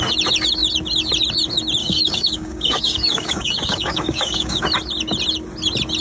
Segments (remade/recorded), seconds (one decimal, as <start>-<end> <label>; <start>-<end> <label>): 0.0-1.8 recorded; 1.8-4.6 remade; 4.6-6.0 recorded